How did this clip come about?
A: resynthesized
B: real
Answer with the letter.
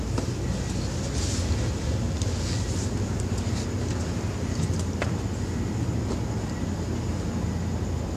B